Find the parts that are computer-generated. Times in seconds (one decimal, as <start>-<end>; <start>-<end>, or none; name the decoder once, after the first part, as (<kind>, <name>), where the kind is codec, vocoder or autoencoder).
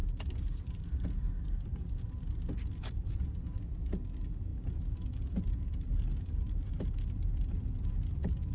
none